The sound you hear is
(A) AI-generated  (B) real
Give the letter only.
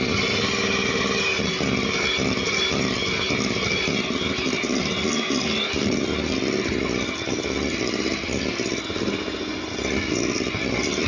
B